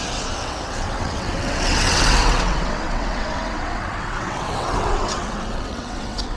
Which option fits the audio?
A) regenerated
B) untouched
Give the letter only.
A